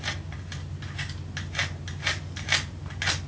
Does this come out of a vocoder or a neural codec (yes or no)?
no